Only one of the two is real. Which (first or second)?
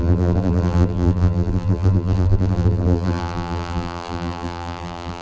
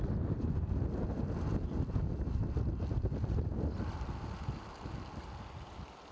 second